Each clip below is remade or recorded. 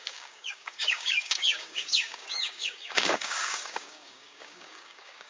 remade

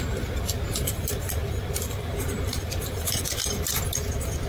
recorded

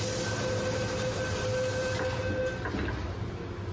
recorded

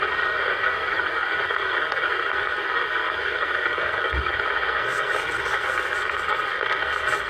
remade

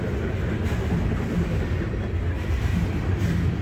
recorded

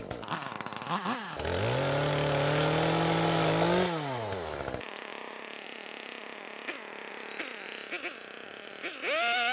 recorded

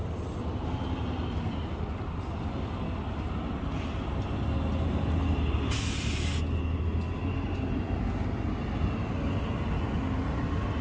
recorded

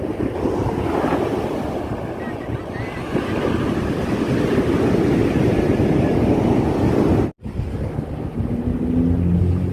recorded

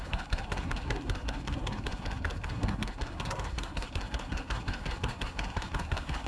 remade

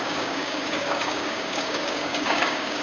remade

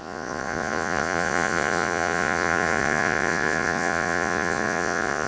remade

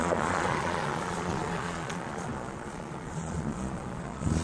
remade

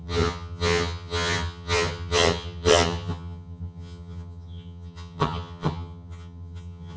remade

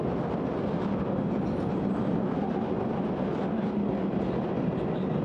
recorded